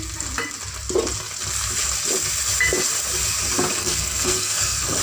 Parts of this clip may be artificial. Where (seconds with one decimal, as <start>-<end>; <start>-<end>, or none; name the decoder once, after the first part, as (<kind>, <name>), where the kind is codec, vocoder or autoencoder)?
3.8-5.0 (codec, SNAC)